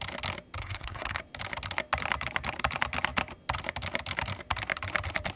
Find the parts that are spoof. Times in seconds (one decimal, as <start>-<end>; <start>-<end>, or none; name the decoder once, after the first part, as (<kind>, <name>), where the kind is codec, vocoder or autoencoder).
0.6-1.2 (codec, SNAC)